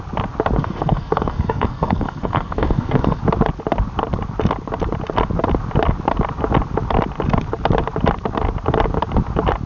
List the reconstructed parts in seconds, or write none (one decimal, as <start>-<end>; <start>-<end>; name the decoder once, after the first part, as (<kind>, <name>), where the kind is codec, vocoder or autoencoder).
0.6-3.2 (codec, SNAC)